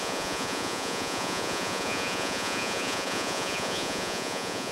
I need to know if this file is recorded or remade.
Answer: remade